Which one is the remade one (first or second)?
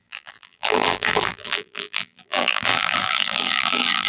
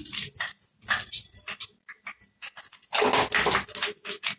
first